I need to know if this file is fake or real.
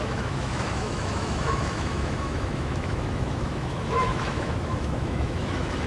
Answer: fake